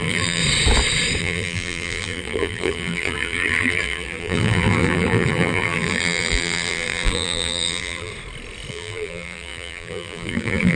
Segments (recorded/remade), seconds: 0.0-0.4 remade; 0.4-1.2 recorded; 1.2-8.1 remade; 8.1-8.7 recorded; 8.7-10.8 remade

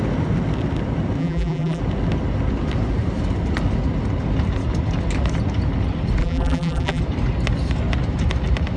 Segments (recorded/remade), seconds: 0.0-1.2 recorded; 1.2-1.8 remade; 1.8-6.2 recorded; 6.2-7.0 remade; 7.0-8.8 recorded

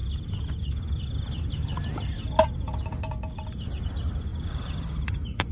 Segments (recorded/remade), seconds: 0.0-4.3 recorded; 4.3-5.5 remade

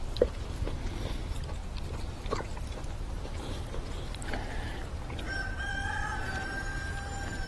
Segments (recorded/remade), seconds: 0.0-7.5 recorded

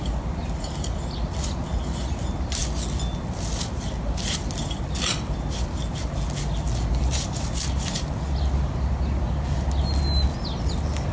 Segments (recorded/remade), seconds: 0.0-11.1 recorded

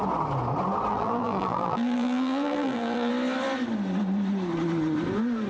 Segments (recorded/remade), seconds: 0.0-0.9 recorded; 0.9-3.1 remade; 3.1-5.5 recorded

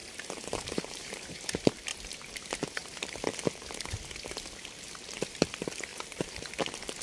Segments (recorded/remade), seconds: 0.0-1.3 remade; 1.3-5.9 recorded; 5.9-6.5 remade; 6.5-7.0 recorded